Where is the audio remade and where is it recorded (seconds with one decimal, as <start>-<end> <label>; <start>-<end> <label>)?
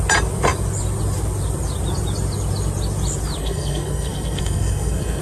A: 0.0-3.4 recorded; 3.4-5.2 remade